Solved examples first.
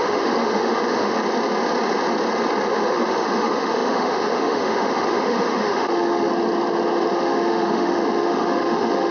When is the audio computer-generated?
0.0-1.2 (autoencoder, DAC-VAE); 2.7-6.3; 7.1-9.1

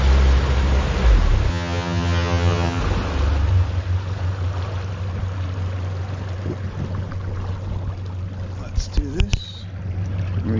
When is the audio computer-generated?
1.5-2.8 (vocoder, HiFi-GAN)